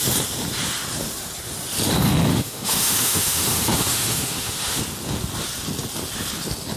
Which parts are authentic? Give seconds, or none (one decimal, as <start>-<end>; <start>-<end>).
0.0-2.3; 4.8-6.8